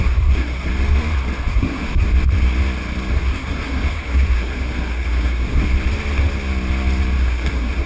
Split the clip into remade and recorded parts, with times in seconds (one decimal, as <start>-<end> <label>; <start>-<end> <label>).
0.0-0.7 remade; 0.7-1.5 recorded; 1.5-2.1 remade; 2.1-3.1 recorded; 3.1-5.7 remade; 5.7-7.2 recorded; 7.2-7.9 remade

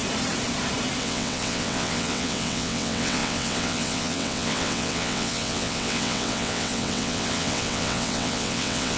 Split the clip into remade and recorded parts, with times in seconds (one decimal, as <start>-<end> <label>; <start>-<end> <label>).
0.0-1.0 recorded; 1.0-9.0 remade

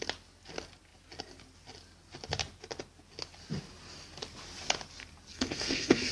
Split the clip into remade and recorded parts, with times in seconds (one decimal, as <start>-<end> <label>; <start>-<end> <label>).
0.0-5.3 recorded; 5.3-6.1 remade

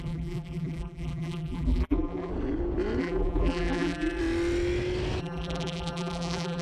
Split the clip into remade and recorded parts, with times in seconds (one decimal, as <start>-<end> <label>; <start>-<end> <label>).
0.0-2.3 remade; 2.3-3.0 recorded; 3.0-4.2 remade; 4.2-5.2 recorded; 5.2-6.6 remade

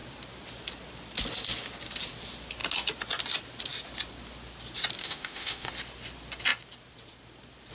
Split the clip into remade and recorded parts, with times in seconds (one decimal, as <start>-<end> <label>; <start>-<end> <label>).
0.0-5.0 recorded; 5.0-5.7 remade; 5.7-7.7 recorded

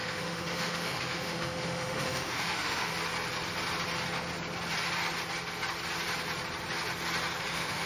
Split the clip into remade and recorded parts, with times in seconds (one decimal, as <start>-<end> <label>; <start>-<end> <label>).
0.0-2.9 remade; 2.9-7.4 recorded; 7.4-7.9 remade